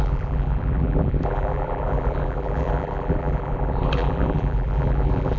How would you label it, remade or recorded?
remade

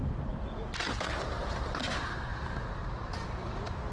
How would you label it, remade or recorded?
recorded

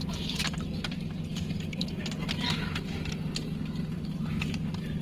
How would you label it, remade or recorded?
recorded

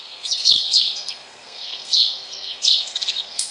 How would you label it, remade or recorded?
remade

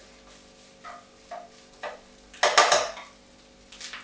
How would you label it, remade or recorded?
recorded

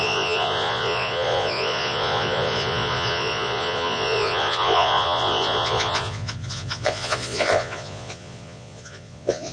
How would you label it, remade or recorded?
remade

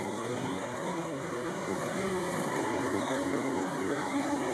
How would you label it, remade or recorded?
remade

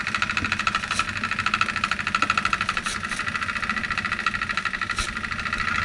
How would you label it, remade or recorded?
recorded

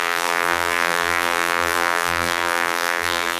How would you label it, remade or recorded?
remade